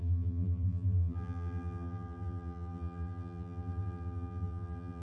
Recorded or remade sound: remade